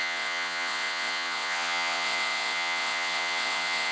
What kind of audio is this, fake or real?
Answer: fake